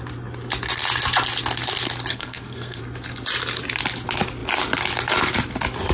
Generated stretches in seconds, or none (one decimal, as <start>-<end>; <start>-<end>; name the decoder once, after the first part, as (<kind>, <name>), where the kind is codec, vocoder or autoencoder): 2.1-2.8 (codec, SNAC)